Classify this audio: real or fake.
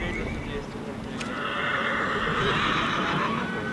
real